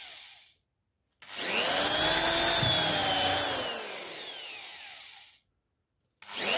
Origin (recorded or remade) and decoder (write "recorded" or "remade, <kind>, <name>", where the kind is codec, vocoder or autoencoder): recorded